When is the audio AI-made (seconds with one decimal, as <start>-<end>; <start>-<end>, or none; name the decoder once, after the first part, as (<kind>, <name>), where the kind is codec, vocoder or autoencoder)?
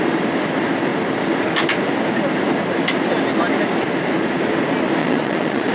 5.0-5.7 (vocoder, Vocos)